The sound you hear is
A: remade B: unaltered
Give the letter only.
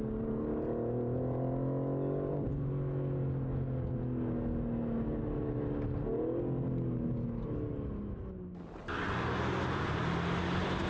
B